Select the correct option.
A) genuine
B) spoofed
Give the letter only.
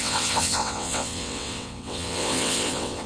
B